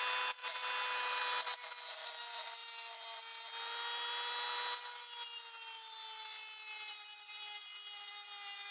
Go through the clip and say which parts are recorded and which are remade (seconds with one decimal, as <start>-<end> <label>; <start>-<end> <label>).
0.0-8.7 recorded